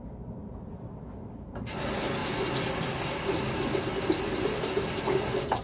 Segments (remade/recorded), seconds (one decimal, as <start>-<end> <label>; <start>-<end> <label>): 0.0-5.6 recorded